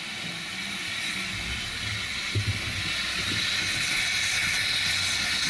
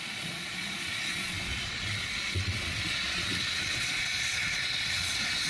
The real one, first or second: first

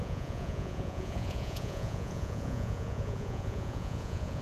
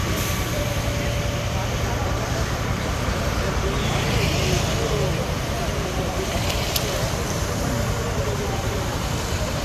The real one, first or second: second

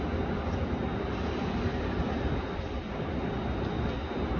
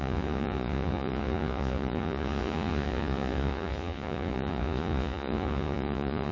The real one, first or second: first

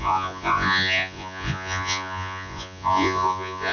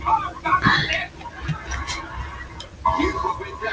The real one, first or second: second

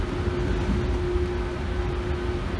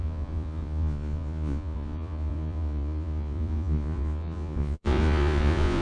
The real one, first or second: first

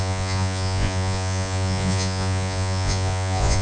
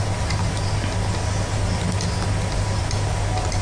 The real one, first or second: second